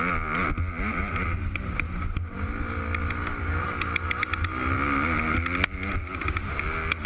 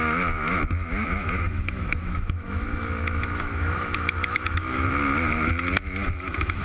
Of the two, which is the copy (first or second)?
second